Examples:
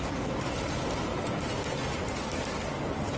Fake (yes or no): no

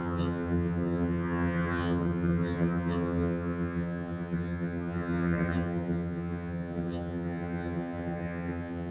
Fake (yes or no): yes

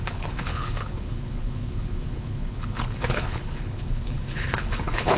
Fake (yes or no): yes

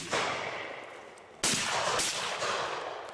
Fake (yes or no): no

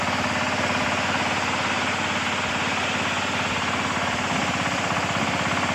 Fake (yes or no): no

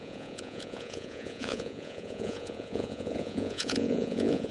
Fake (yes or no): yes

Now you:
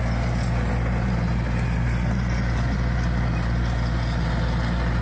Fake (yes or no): no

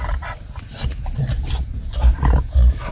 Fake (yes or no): no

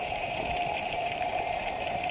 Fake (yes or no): yes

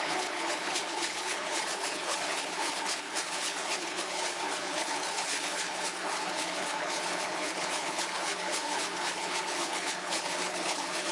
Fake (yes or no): yes